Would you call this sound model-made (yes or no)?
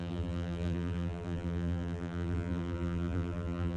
yes